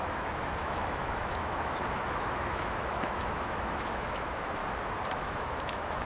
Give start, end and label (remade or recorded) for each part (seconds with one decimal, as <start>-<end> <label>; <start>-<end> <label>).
0.0-4.6 remade; 4.6-5.1 recorded; 5.1-6.0 remade